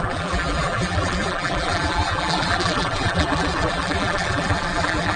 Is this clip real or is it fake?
fake